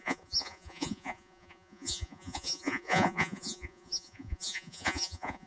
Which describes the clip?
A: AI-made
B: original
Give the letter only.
A